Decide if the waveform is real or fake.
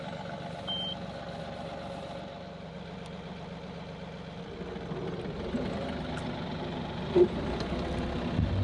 real